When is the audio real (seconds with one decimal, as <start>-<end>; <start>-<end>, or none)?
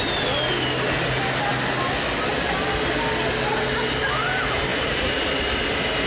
0.0-4.7; 5.6-6.1